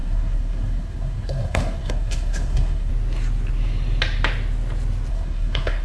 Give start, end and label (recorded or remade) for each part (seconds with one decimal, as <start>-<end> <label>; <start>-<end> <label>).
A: 0.0-2.9 remade; 2.9-5.1 recorded; 5.1-5.8 remade